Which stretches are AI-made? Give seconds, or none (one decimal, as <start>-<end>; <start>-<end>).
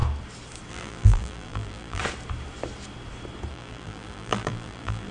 0.7-2.0; 3.5-5.1